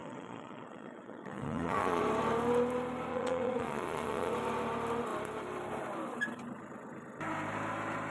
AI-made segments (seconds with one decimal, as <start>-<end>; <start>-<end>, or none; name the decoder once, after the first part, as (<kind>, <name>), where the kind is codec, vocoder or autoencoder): 0.0-2.0 (vocoder, Vocos); 3.1-4.3

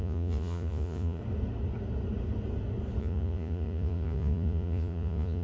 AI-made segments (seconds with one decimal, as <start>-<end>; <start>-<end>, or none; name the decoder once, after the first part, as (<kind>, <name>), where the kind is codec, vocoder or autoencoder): 0.0-1.2 (vocoder, Vocos); 3.0-5.4

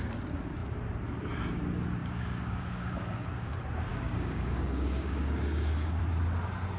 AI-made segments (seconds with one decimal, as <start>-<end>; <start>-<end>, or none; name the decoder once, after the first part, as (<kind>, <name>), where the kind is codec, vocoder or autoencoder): 2.0-3.5 (codec, DAC); 3.9-6.0

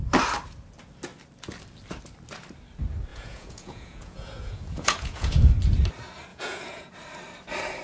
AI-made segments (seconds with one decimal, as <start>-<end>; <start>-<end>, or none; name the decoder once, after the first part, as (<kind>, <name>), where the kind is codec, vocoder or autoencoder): 3.1-5.5 (vocoder, Vocos); 6.3-6.9

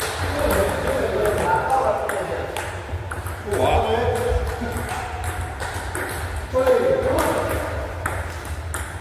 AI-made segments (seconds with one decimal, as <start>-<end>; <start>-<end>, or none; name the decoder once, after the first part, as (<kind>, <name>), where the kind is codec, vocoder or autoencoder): 0.6-1.3 (codec, DAC)

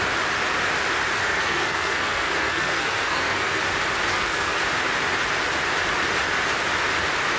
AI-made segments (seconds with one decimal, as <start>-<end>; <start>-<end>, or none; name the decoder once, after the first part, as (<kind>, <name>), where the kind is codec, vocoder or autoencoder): 1.2-3.6 (codec, SNAC); 4.1-4.6